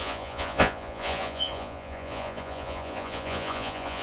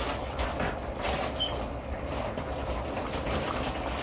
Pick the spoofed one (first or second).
first